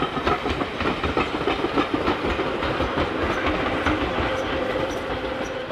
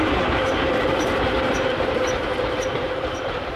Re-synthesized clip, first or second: second